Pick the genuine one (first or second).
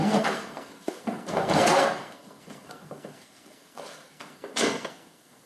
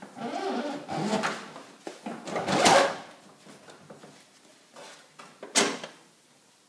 second